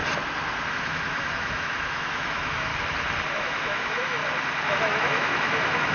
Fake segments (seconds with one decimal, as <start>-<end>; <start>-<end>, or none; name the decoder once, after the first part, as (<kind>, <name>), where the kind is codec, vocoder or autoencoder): 0.7-2.7 (autoencoder, DAC-VAE); 3.3-4.2; 4.7-5.9